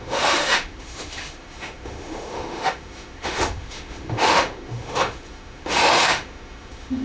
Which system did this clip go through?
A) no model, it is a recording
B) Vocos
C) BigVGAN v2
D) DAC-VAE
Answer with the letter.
D